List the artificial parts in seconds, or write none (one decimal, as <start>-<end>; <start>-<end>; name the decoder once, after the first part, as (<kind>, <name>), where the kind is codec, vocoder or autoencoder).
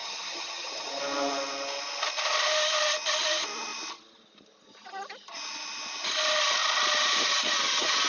0.0-1.0 (vocoder, HiFi-GAN)